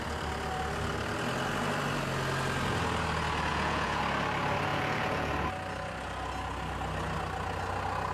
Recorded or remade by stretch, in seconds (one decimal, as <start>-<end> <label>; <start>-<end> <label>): 0.0-3.5 recorded; 3.5-4.0 remade; 4.0-4.7 recorded; 4.7-5.3 remade; 5.3-8.1 recorded